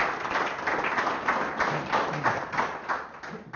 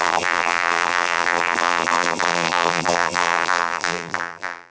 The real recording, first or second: first